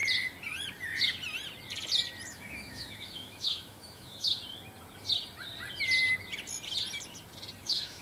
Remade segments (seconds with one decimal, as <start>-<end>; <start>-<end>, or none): 2.3-4.4; 7.6-8.0